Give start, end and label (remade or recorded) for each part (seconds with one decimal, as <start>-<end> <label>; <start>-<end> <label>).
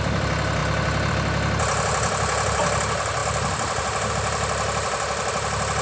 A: 0.0-5.8 recorded